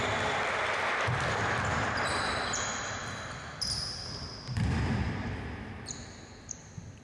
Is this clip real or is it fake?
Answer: fake